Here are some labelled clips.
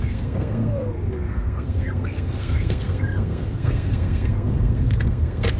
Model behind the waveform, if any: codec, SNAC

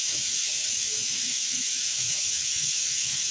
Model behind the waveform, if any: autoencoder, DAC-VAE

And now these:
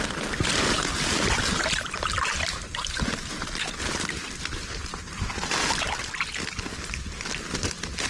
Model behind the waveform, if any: none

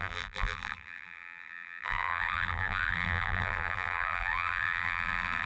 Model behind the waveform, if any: vocoder, BigVGAN v2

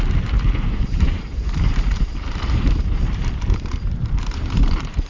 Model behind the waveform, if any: vocoder, BigVGAN v2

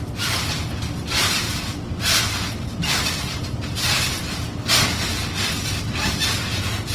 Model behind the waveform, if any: vocoder, BigVGAN v2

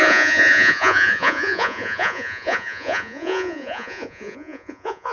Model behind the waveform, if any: vocoder, Vocos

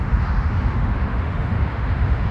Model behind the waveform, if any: autoencoder, DAC-VAE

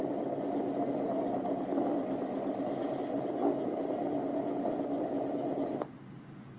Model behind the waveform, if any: none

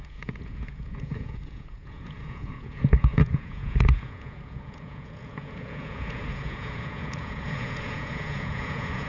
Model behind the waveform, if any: vocoder, Vocos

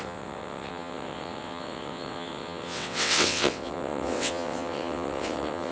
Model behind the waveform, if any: vocoder, WaveNeXt